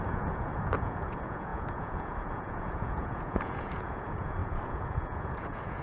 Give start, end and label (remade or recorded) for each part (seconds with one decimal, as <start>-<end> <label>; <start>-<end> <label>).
0.0-5.8 remade